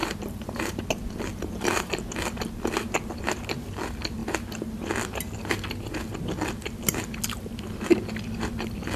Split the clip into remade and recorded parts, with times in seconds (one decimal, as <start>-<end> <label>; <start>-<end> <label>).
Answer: 0.0-0.8 remade; 0.8-1.3 recorded; 1.3-1.9 remade; 1.9-9.0 recorded